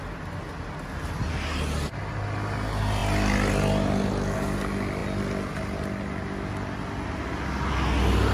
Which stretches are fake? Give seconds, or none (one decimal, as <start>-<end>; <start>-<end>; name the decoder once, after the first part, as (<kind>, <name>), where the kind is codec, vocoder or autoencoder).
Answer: none